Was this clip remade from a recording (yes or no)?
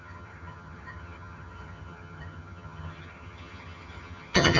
yes